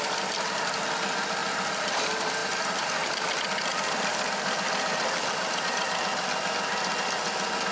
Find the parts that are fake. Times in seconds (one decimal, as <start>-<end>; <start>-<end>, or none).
none